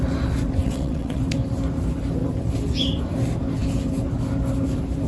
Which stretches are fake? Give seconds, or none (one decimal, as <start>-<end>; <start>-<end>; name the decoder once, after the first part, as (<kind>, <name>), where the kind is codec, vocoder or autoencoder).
0.6-1.2 (vocoder, WaveNeXt)